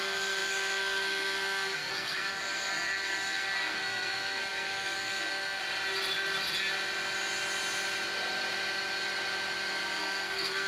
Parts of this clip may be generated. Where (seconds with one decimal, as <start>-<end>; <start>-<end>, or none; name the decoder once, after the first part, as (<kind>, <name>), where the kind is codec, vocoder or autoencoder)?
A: 0.0-5.6 (codec, SNAC); 10.0-10.7